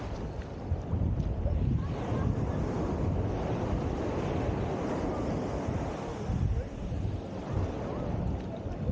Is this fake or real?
real